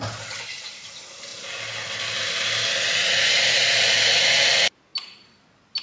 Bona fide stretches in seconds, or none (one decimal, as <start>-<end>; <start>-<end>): 0.0-5.8